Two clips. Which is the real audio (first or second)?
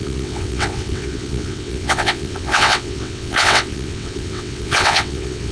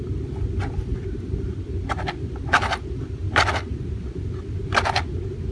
second